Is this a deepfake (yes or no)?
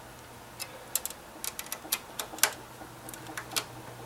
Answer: no